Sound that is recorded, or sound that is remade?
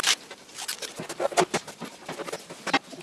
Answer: recorded